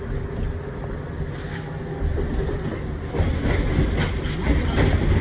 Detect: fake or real real